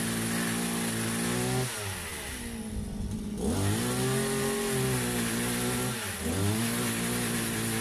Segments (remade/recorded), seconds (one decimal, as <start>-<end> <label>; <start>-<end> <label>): 0.0-7.8 recorded